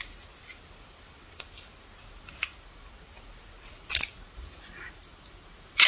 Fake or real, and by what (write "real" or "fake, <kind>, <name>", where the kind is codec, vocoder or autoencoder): real